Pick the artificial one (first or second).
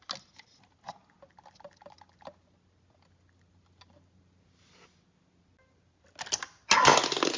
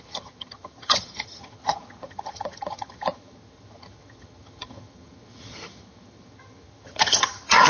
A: second